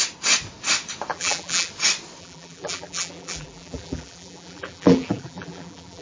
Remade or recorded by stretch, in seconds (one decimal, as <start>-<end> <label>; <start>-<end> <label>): 0.0-1.1 recorded; 1.1-1.7 remade; 1.7-2.2 recorded; 2.2-6.0 remade